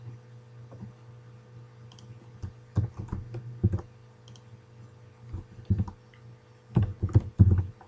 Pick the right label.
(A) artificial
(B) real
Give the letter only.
B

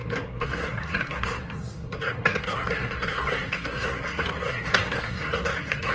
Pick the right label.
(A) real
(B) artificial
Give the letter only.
B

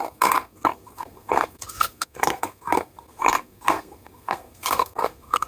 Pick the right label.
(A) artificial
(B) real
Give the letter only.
A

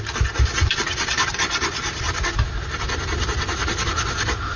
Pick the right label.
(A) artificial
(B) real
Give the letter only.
B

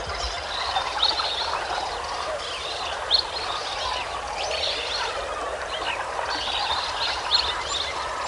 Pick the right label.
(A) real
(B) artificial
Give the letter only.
A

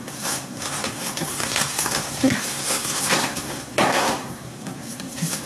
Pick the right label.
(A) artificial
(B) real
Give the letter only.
A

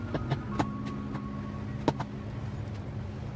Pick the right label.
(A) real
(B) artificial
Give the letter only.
A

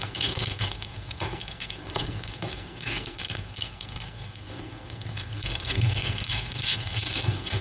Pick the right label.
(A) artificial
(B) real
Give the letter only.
A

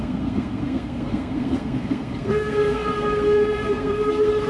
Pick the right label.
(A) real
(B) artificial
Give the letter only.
B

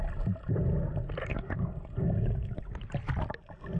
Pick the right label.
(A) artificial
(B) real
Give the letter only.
B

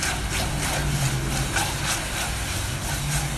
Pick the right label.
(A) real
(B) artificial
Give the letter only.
A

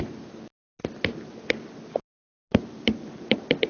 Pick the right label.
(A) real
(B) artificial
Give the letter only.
A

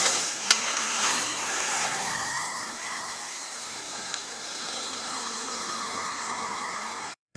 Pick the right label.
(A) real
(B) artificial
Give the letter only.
B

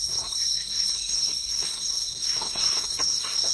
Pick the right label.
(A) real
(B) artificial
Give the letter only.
B